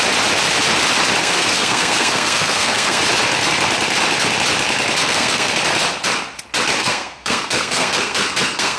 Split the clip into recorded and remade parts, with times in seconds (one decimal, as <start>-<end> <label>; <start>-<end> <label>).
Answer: 0.0-1.2 recorded; 1.2-3.0 remade; 3.0-5.0 recorded; 5.0-5.5 remade; 5.5-6.8 recorded; 6.8-8.8 remade